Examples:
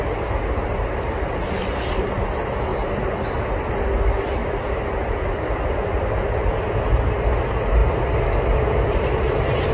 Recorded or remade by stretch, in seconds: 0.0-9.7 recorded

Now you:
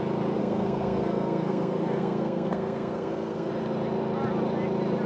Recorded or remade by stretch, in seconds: 0.0-0.4 recorded; 0.4-3.5 remade; 3.5-5.1 recorded

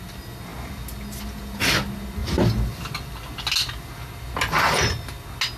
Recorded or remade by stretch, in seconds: 0.0-5.6 recorded

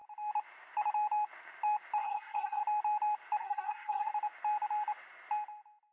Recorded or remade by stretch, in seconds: 0.0-2.0 recorded; 2.0-2.6 remade; 2.6-3.4 recorded; 3.4-4.1 remade; 4.1-5.9 recorded